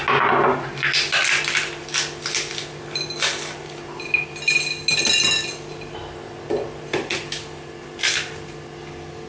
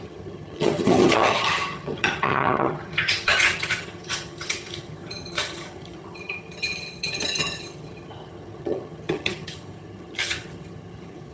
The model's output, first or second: second